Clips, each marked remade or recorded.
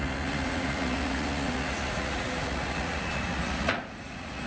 remade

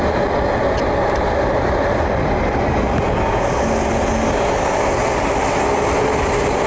recorded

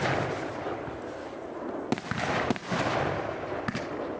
recorded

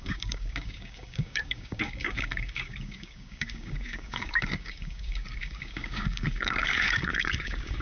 remade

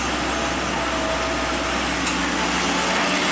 recorded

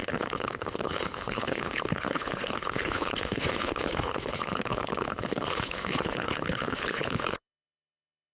remade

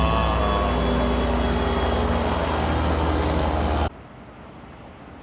recorded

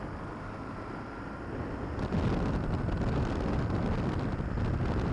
recorded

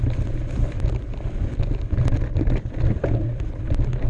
recorded